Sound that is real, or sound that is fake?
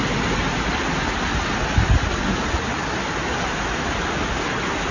real